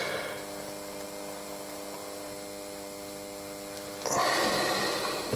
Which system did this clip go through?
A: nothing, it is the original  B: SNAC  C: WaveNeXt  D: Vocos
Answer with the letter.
A